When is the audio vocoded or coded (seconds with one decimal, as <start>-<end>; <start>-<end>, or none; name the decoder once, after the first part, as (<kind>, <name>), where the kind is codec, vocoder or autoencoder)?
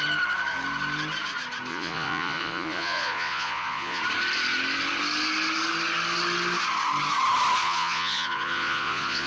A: 1.7-4.0 (vocoder, Vocos); 7.6-9.3